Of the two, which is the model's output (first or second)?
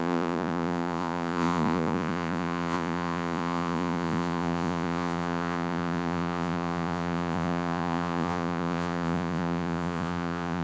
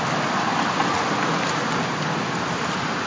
first